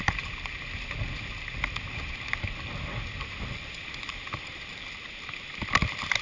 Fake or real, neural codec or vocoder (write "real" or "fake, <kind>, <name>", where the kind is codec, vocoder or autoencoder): real